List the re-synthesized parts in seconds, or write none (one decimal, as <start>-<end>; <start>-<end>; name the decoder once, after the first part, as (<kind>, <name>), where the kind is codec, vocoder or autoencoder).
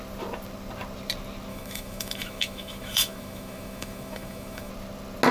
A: 1.5-4.7 (autoencoder, DAC-VAE)